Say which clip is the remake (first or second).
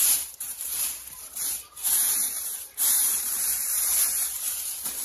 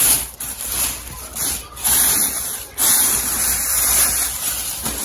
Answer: first